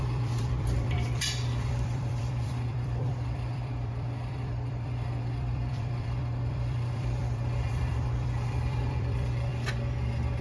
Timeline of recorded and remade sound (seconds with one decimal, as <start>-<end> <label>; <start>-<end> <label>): 0.0-9.5 remade; 9.5-10.4 recorded